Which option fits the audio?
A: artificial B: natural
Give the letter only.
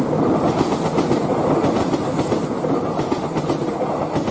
B